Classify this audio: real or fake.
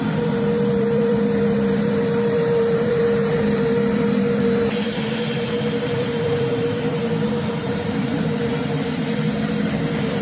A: fake